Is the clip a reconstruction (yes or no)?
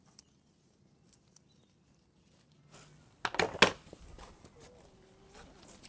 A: no